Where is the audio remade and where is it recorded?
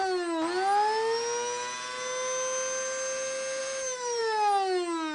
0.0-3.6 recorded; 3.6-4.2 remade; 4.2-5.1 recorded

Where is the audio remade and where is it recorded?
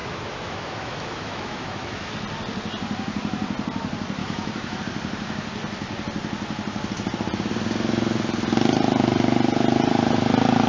0.0-2.1 remade; 2.1-4.2 recorded; 4.2-4.8 remade; 4.8-10.7 recorded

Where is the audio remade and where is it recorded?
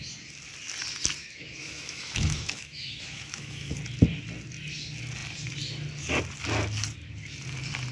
0.0-1.2 recorded; 1.2-3.7 remade; 3.7-7.9 recorded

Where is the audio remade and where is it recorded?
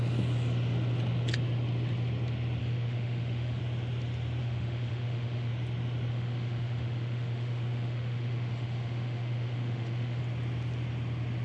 0.0-2.6 recorded; 2.6-3.6 remade; 3.6-4.4 recorded; 4.4-5.5 remade; 5.5-6.1 recorded; 6.1-10.2 remade; 10.2-11.4 recorded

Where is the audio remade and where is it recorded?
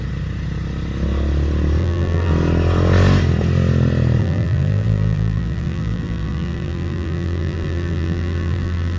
0.0-1.8 recorded; 1.8-2.3 remade; 2.3-4.2 recorded; 4.2-9.0 remade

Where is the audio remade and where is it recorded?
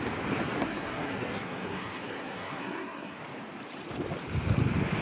0.0-0.6 recorded; 0.6-3.2 remade; 3.2-5.0 recorded